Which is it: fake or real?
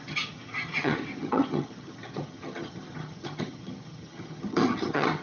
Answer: fake